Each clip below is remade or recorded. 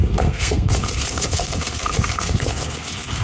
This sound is remade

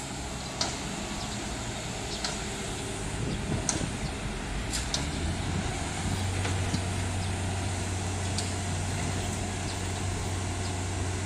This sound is recorded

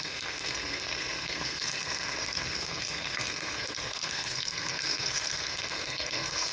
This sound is remade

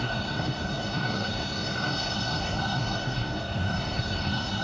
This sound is remade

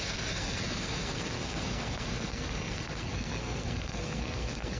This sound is remade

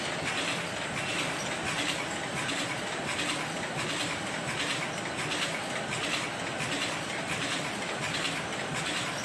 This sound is recorded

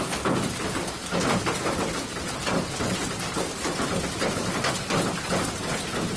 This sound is recorded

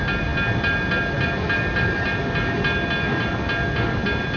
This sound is recorded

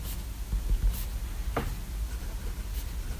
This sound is recorded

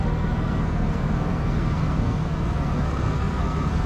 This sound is remade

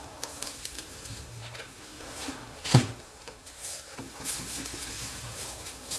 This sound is remade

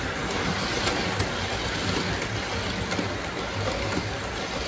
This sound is recorded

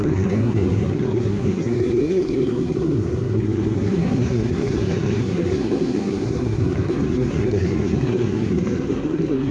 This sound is remade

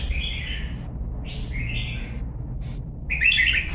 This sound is recorded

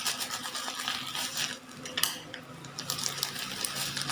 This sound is recorded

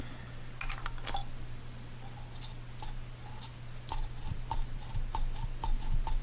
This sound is recorded